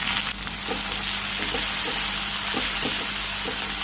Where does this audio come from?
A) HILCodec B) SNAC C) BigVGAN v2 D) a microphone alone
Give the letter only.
D